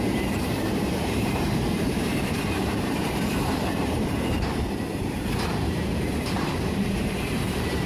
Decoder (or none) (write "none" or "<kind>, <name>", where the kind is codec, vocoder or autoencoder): vocoder, BigVGAN v2